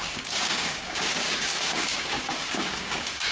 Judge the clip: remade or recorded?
remade